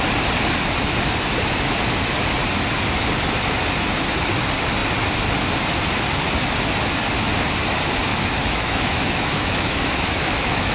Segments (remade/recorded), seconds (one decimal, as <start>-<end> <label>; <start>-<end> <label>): 0.0-8.1 recorded; 8.1-10.7 remade